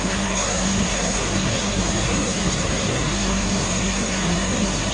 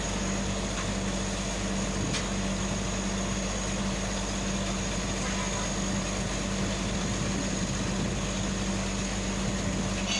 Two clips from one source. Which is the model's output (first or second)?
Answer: first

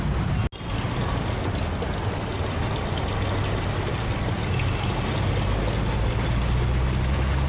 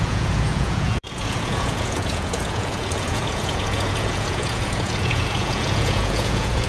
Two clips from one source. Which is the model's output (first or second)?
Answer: second